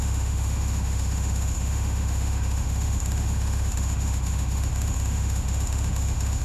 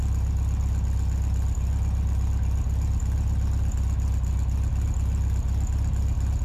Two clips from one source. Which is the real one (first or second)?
second